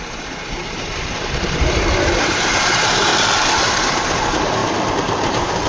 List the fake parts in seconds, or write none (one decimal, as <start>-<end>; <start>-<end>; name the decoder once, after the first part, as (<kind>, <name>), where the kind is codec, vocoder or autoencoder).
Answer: 0.0-3.1 (vocoder, BigVGAN v2); 3.6-4.6; 5.2-5.7